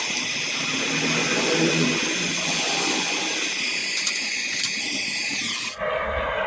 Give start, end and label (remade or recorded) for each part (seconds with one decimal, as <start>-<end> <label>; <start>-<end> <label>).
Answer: 0.0-1.2 recorded; 1.2-3.2 remade; 3.2-3.8 recorded; 3.8-4.6 remade; 4.6-6.5 recorded